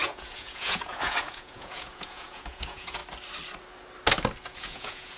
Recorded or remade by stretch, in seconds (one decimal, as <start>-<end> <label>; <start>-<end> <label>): 0.0-3.0 remade; 3.0-4.4 recorded; 4.4-5.2 remade